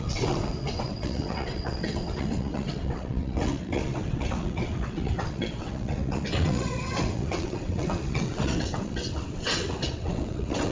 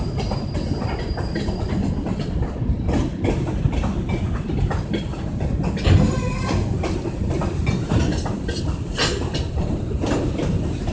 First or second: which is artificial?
first